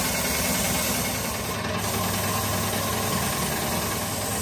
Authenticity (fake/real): real